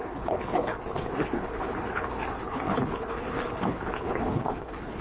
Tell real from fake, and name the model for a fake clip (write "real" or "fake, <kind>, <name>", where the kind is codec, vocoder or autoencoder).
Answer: fake, codec, HILCodec